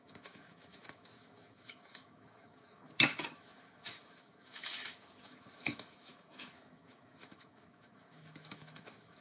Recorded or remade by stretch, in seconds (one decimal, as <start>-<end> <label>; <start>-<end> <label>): 0.0-9.2 remade